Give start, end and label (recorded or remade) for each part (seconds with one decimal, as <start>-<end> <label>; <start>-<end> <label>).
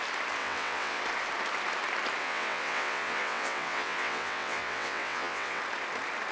0.0-0.4 recorded; 0.4-1.0 remade; 1.0-2.2 recorded; 2.2-5.6 remade; 5.6-6.3 recorded